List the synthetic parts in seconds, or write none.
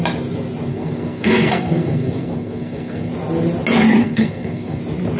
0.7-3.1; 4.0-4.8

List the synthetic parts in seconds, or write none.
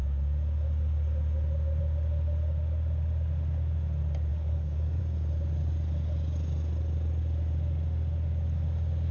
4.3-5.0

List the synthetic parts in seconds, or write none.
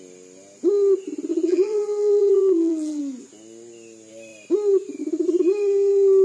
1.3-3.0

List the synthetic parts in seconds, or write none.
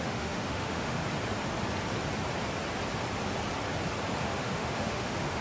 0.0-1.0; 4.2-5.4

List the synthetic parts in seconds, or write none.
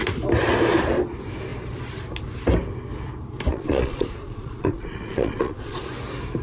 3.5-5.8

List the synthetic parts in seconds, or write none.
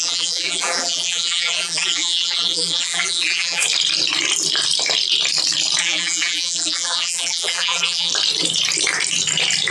0.0-3.6; 5.8-8.1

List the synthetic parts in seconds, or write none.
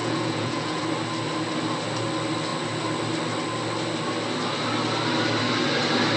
0.0-0.8